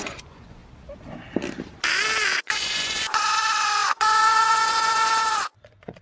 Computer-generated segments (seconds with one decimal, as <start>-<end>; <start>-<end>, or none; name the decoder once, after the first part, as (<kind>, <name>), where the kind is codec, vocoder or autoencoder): 0.0-0.6 (vocoder, Vocos); 2.4-6.0